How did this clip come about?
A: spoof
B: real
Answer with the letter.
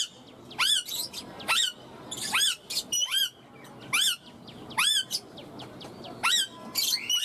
B